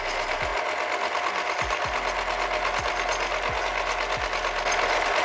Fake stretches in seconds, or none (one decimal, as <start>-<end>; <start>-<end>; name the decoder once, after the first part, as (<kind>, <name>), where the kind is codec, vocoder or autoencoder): none